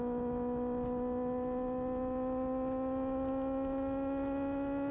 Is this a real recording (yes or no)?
yes